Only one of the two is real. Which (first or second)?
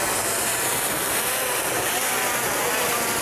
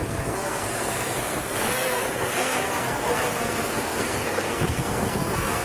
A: first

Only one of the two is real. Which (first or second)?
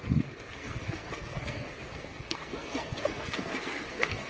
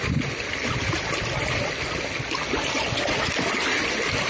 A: second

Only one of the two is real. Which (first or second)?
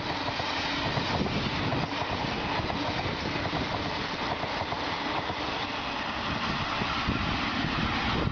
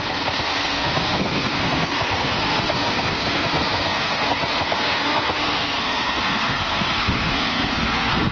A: first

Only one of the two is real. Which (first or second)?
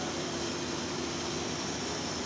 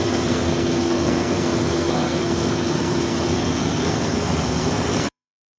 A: first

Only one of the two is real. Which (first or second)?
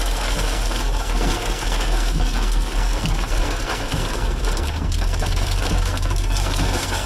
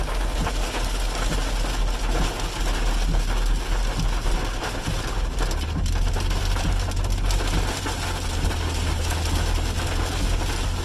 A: second